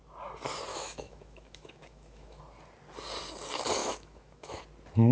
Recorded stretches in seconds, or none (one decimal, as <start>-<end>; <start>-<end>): 0.0-0.7; 2.4-3.8; 4.6-5.1